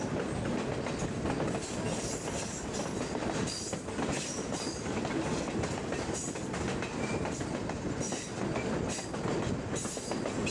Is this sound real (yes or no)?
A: yes